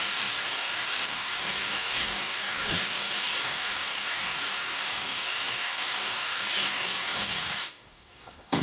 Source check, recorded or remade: remade